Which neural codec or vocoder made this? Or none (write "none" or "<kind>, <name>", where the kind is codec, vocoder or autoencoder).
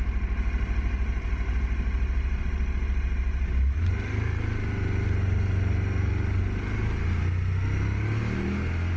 none